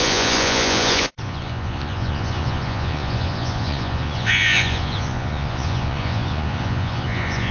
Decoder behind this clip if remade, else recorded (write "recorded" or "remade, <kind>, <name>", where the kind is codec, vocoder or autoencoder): remade, vocoder, Vocos